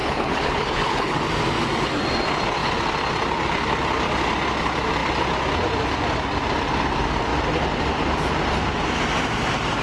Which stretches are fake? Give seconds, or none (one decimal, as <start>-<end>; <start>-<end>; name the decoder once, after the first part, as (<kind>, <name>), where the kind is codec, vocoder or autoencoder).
0.0-1.2 (codec, HILCodec)